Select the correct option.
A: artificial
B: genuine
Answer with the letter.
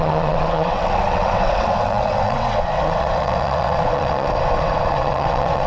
A